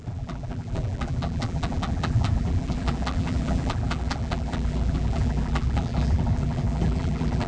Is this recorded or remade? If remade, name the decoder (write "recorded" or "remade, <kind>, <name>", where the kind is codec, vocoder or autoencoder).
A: remade, vocoder, BigVGAN v2